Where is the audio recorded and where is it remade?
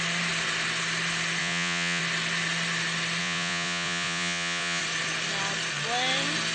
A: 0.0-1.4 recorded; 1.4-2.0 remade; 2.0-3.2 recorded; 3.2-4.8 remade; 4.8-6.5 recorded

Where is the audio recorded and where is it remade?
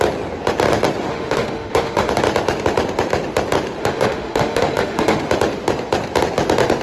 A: 0.0-1.1 recorded; 1.1-2.1 remade; 2.1-3.8 recorded; 3.8-5.2 remade; 5.2-6.8 recorded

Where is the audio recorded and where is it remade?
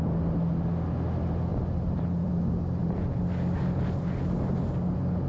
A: 0.0-1.5 recorded; 1.5-2.3 remade; 2.3-2.8 recorded; 2.8-4.1 remade; 4.1-5.3 recorded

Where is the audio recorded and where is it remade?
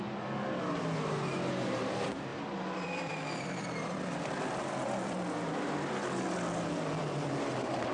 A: 0.0-2.3 recorded; 2.3-5.5 remade; 5.5-7.9 recorded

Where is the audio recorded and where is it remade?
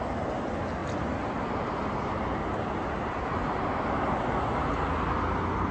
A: 0.0-5.7 recorded